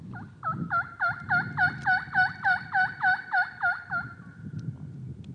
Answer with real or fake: fake